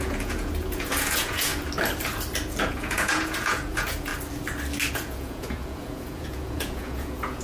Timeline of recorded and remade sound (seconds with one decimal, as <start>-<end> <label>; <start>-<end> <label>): 0.0-1.5 remade; 1.5-2.6 recorded; 2.6-4.1 remade; 4.1-4.9 recorded; 4.9-7.4 remade